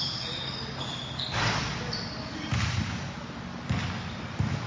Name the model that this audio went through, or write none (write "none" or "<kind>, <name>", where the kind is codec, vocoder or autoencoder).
none